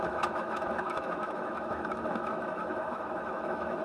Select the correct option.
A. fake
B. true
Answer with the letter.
A